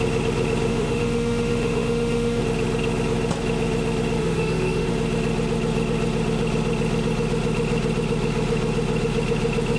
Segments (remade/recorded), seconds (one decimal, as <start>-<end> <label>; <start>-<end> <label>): 0.0-0.7 recorded; 0.7-2.4 remade; 2.4-4.2 recorded; 4.2-4.9 remade; 4.9-9.8 recorded